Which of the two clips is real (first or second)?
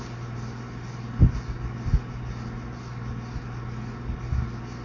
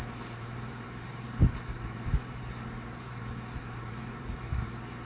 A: first